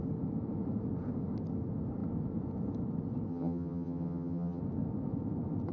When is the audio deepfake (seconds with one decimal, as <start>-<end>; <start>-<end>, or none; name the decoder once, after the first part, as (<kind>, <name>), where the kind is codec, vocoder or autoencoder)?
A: 3.3-4.6 (vocoder, HiFi-GAN)

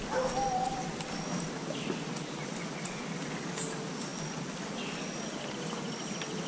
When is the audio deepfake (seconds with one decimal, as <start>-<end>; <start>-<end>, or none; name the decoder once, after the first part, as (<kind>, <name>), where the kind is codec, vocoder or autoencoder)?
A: none